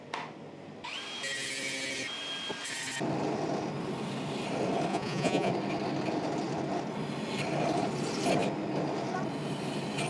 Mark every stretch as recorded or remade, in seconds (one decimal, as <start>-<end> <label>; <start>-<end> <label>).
0.0-4.9 recorded; 4.9-5.5 remade; 5.5-10.1 recorded

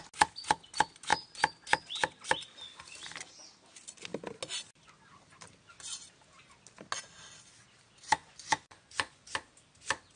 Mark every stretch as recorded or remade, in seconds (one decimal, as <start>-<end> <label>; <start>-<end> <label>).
0.0-8.2 recorded; 8.2-9.3 remade; 9.3-10.2 recorded

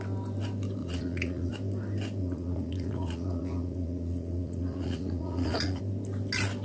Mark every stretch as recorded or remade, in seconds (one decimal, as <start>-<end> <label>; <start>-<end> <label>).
0.0-0.8 recorded; 0.8-1.5 remade; 1.5-2.2 recorded; 2.2-5.8 remade; 5.8-6.6 recorded

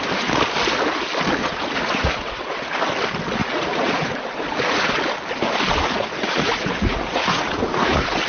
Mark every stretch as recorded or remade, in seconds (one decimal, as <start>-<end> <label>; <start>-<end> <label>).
0.0-1.4 recorded; 1.4-2.8 remade; 2.8-3.4 recorded; 3.4-4.9 remade; 4.9-5.8 recorded; 5.8-8.3 remade

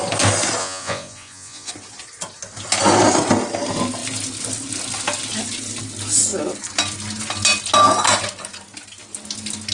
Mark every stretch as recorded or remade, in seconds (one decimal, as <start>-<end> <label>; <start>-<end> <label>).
0.0-0.6 recorded; 0.6-1.7 remade; 1.7-9.7 recorded

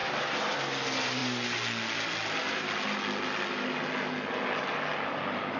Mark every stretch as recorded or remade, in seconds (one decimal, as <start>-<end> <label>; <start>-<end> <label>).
0.0-5.6 recorded

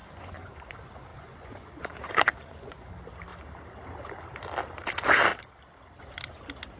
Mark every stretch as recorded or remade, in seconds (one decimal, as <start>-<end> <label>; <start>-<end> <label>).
0.0-0.6 remade; 0.6-1.1 recorded; 1.1-2.9 remade; 2.9-6.8 recorded

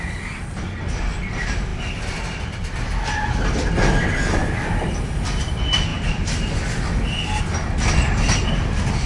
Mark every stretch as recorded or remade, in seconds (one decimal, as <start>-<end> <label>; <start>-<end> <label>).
0.0-9.1 recorded